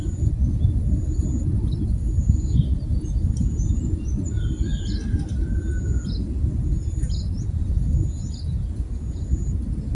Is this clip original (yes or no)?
yes